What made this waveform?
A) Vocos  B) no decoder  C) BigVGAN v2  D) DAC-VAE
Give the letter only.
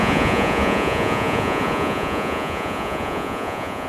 A